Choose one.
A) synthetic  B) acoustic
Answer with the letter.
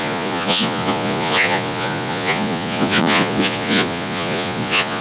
A